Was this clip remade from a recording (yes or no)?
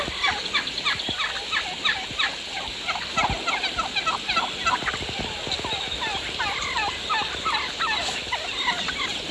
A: no